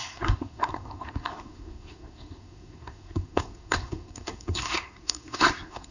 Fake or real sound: fake